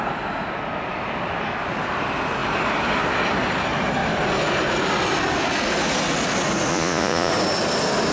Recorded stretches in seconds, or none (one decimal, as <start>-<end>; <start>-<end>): 0.0-6.7; 7.3-8.1